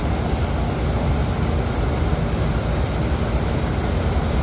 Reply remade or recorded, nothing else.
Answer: recorded